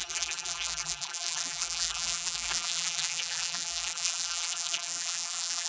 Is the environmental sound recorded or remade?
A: remade